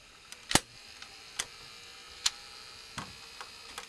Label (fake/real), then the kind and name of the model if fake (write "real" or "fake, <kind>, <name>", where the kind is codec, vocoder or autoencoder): real